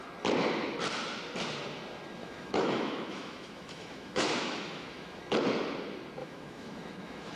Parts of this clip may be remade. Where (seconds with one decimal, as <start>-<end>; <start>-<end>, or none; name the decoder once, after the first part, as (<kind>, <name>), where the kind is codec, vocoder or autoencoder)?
2.2-5.2 (autoencoder, DAC-VAE); 6.2-7.4